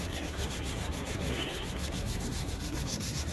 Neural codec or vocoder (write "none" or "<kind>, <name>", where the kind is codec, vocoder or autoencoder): codec, SNAC